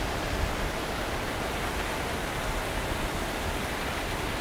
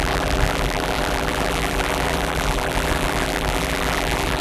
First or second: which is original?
first